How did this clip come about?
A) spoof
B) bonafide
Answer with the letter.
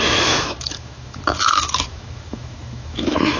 A